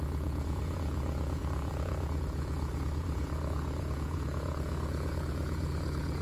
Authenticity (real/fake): fake